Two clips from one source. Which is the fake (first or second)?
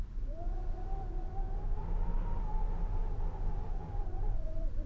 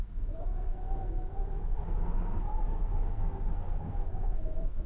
second